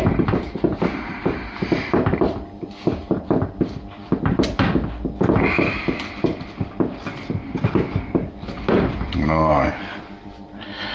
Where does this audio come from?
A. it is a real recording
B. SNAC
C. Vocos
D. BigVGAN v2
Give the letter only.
D